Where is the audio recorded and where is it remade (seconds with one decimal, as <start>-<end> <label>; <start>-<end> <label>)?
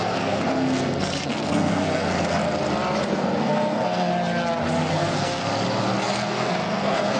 0.0-2.4 remade; 2.4-3.1 recorded; 3.1-4.1 remade; 4.1-4.9 recorded; 4.9-5.4 remade; 5.4-6.1 recorded; 6.1-7.2 remade